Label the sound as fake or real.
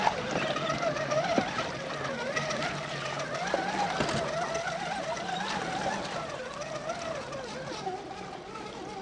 real